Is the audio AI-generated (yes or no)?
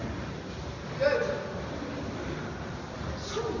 no